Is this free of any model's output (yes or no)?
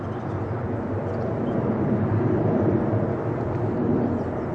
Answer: no